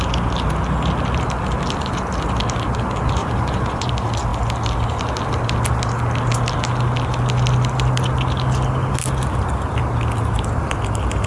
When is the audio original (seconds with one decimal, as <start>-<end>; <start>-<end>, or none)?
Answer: 0.0-3.2; 3.9-11.3